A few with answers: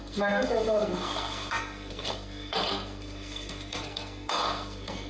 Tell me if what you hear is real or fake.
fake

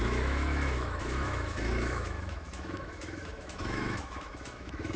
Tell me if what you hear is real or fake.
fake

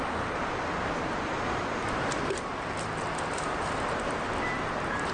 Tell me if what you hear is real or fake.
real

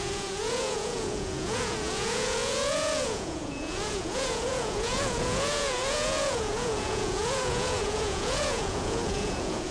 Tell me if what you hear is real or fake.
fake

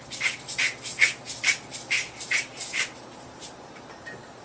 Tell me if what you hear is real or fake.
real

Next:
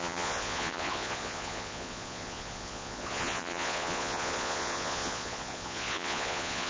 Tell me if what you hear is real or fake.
fake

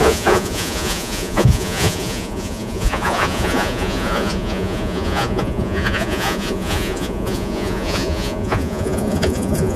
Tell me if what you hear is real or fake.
fake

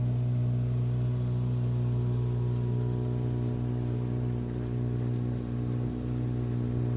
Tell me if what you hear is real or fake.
real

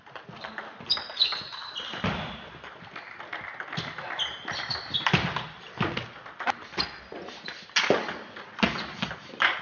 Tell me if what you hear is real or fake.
real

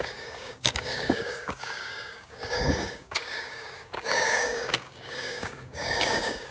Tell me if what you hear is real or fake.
fake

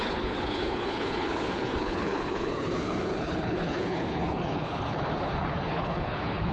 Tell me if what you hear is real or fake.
fake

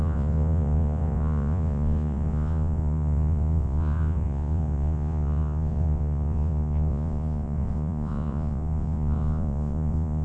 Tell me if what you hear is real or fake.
fake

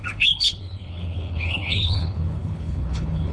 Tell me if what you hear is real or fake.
fake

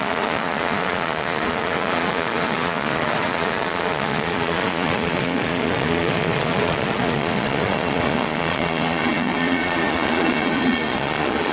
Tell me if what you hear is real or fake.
fake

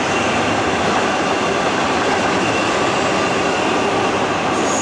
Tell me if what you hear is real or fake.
real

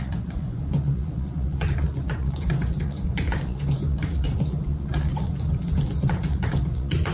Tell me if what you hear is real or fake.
fake